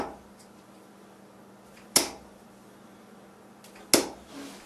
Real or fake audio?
real